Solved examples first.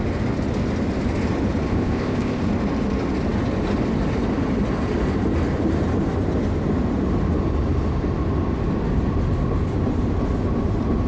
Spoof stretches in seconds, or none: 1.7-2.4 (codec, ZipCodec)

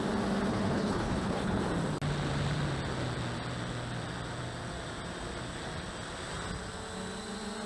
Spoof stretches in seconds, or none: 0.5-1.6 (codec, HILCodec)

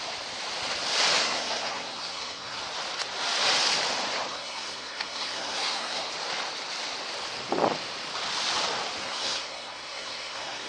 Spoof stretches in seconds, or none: 1.2-2.6 (codec, SNAC); 4.3-6.1; 9.0-10.7

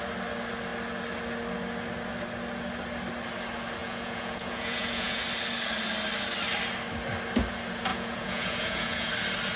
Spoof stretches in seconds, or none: 3.8-5.2 (vocoder, Vocos); 7.9-9.1